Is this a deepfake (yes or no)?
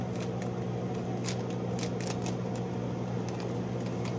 no